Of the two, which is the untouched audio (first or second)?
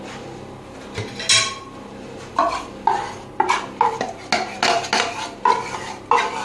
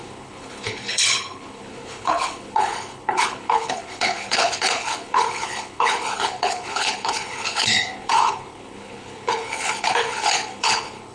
first